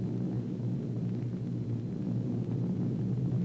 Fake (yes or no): no